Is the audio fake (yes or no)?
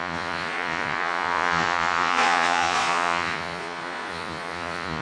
yes